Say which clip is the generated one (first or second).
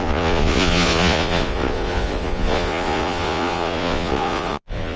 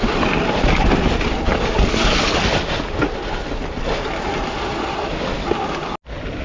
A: first